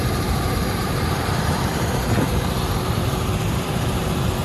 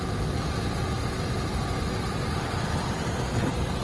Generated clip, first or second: first